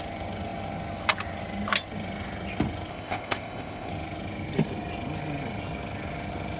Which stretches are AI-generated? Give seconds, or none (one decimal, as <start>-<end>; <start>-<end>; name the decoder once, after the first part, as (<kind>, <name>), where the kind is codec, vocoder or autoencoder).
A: 2.9-3.9 (codec, ZipCodec)